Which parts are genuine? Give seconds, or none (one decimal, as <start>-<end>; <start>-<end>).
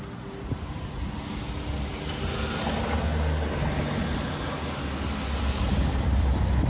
0.0-6.7